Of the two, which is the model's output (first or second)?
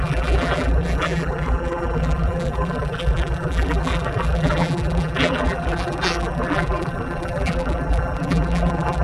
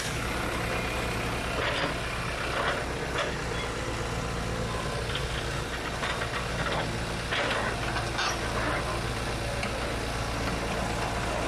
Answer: first